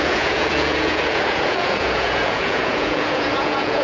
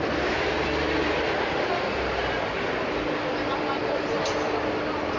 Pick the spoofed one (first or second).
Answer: first